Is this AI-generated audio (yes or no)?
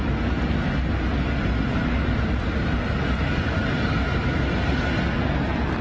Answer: no